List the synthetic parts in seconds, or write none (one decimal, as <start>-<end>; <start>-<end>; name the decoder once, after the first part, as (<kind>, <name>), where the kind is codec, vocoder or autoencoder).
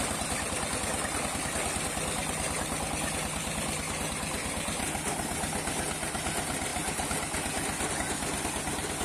none